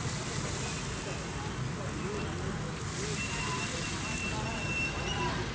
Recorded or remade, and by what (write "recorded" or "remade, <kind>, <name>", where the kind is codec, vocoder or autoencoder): recorded